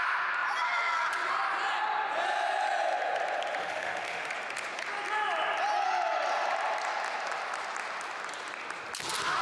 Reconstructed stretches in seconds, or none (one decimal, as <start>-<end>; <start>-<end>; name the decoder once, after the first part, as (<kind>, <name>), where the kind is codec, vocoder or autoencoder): 3.6-4.3 (autoencoder, DAC-VAE)